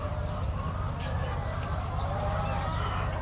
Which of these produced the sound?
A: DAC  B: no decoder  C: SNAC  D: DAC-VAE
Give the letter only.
B